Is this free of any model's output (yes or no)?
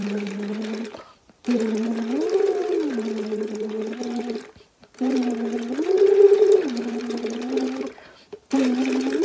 no